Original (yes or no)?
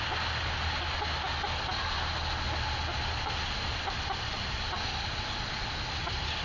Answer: yes